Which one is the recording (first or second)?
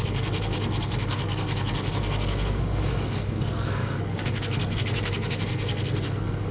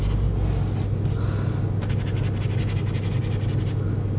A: second